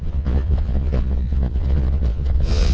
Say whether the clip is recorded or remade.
remade